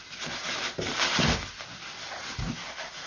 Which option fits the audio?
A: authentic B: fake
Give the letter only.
A